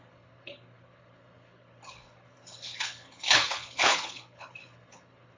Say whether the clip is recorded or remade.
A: remade